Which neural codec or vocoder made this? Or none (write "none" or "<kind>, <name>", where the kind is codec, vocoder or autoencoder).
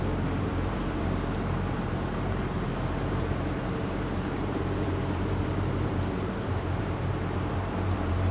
vocoder, BigVGAN v2